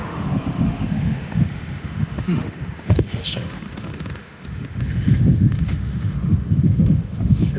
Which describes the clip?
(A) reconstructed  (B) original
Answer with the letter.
A